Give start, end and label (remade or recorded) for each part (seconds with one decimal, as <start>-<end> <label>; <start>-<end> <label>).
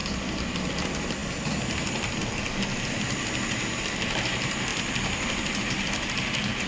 0.0-0.7 remade; 0.7-4.7 recorded; 4.7-5.9 remade; 5.9-6.7 recorded